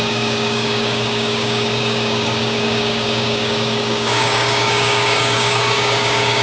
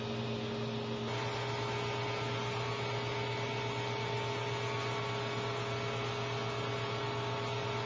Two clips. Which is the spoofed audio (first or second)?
first